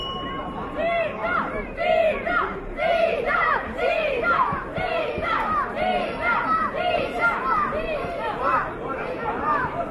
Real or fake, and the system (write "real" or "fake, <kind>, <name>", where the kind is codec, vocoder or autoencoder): fake, vocoder, BigVGAN v2